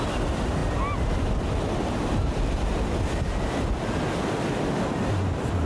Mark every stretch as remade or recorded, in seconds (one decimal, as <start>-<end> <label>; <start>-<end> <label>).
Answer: 0.0-5.7 recorded